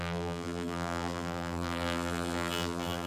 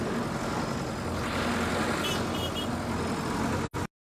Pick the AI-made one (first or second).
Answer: first